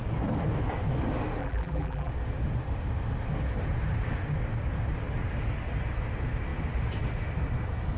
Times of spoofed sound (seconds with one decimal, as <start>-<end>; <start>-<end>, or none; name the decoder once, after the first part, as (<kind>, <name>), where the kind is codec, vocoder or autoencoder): 1.4-2.1 (vocoder, BigVGAN v2)